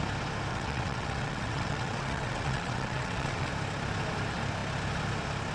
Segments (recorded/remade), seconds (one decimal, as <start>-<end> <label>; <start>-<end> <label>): 0.0-0.5 recorded; 0.5-3.5 remade; 3.5-5.5 recorded